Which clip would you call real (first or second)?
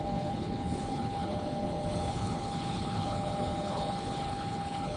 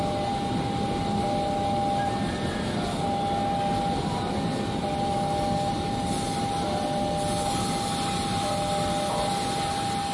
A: second